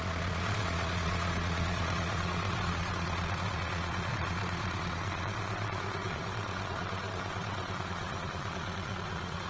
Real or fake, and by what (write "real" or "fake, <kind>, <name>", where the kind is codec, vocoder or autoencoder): fake, vocoder, Vocos